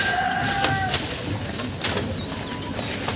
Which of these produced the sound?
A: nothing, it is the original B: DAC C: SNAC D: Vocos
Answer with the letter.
A